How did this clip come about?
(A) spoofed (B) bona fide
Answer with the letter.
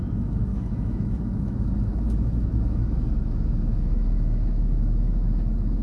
A